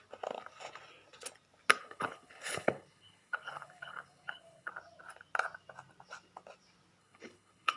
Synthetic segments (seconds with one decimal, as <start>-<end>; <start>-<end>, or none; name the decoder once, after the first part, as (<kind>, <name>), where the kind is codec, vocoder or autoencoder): 1.8-4.7 (codec, HILCodec); 7.0-7.8

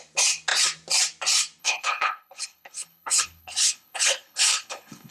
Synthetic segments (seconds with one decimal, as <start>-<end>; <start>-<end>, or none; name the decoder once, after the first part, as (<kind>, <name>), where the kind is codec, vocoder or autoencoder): 1.6-5.1 (codec, HILCodec)

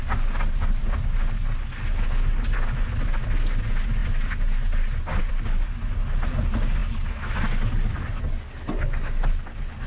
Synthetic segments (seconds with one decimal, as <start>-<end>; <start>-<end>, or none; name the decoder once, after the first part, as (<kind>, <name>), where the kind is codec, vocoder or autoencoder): none

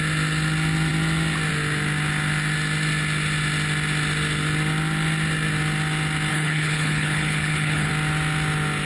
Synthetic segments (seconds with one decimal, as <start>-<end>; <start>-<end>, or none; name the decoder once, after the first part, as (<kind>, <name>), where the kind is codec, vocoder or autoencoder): 6.3-7.9 (codec, HILCodec)

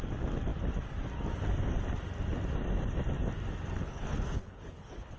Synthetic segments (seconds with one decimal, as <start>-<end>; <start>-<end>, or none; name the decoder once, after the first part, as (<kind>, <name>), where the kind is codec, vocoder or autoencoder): 3.8-5.2 (codec, HILCodec)

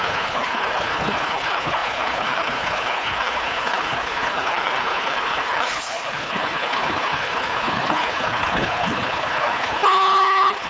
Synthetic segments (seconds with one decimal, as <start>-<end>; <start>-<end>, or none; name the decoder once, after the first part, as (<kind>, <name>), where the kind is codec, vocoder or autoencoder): 0.0-10.7 (codec, HILCodec)

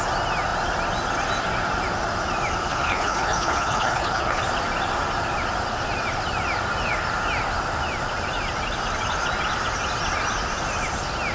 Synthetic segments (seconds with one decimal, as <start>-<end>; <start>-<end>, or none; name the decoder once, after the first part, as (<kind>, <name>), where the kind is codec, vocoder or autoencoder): 2.7-4.4 (codec, HILCodec)

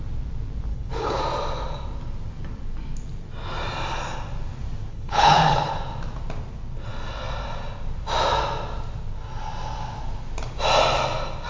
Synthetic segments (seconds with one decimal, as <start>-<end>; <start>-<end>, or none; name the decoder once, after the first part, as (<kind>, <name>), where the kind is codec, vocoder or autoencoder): 0.7-1.2 (codec, HILCodec); 4.9-5.8